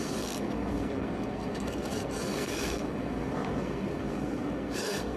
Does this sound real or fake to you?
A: fake